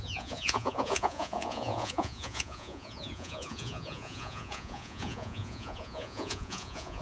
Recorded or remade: remade